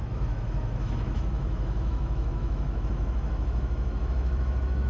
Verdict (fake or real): fake